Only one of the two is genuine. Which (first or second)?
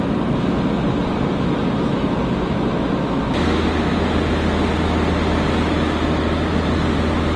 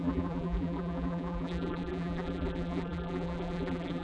first